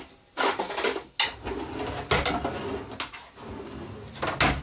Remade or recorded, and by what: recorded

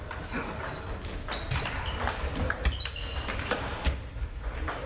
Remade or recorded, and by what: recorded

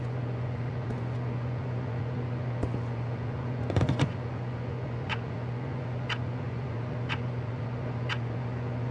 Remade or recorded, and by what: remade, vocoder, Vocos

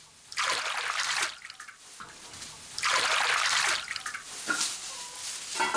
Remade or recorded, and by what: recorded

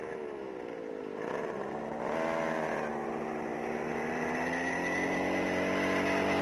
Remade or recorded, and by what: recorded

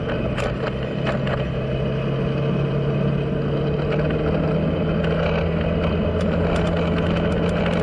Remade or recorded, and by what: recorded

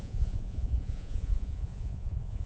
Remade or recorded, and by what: remade, vocoder, Vocos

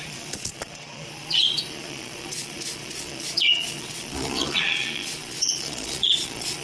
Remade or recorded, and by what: remade, vocoder, Vocos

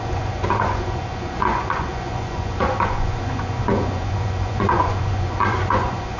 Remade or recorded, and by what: remade, vocoder, Vocos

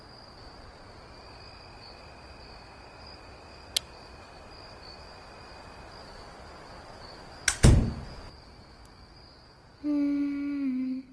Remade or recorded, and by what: recorded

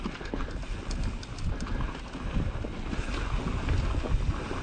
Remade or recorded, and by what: recorded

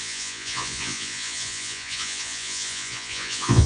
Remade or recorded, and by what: remade, vocoder, Vocos